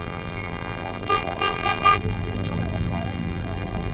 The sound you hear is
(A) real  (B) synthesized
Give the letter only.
B